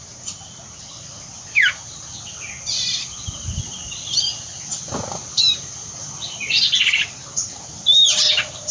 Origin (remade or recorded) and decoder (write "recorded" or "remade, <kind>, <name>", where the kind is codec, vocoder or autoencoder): recorded